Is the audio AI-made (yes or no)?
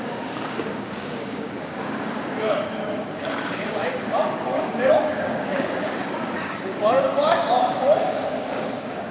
yes